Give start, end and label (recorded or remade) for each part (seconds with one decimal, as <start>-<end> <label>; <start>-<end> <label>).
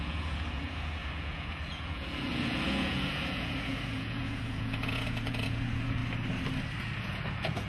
0.0-6.0 remade; 6.0-6.8 recorded; 6.8-7.7 remade